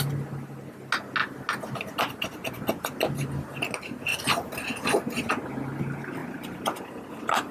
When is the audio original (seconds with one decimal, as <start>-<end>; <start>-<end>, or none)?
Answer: 0.0-4.1; 5.1-7.5